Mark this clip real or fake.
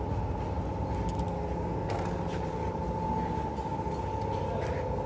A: real